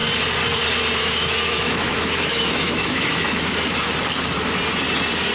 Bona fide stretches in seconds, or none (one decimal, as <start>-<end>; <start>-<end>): 0.0-1.0; 3.9-5.3

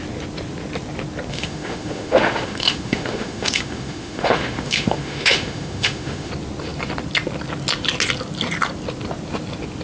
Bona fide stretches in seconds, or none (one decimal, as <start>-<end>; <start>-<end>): 0.0-1.3; 6.3-9.8

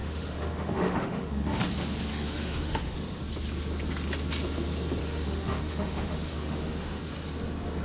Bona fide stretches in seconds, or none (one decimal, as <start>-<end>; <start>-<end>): 1.6-2.1; 3.2-5.0; 7.0-7.8

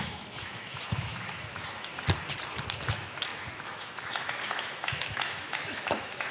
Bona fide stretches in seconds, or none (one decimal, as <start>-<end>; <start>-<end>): 1.9-2.9

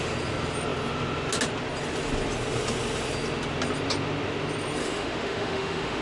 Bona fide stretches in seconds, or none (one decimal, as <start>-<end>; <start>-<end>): 0.0-4.8

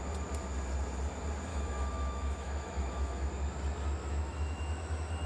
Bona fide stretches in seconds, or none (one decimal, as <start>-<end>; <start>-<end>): 0.0-1.5; 3.3-4.0; 4.6-5.3